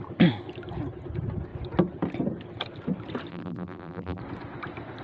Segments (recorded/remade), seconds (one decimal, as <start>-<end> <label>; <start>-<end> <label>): 0.0-3.3 recorded; 3.3-4.2 remade; 4.2-5.0 recorded